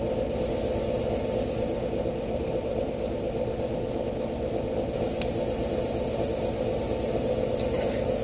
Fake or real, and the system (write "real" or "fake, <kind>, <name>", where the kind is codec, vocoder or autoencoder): real